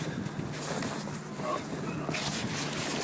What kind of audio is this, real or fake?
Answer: real